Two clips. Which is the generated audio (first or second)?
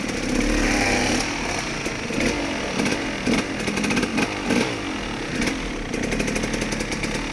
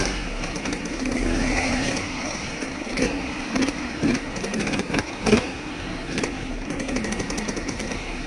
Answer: second